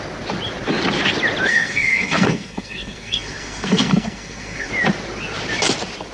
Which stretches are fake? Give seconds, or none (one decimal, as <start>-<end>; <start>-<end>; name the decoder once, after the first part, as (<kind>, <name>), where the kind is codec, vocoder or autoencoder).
1.5-4.7 (codec, SNAC)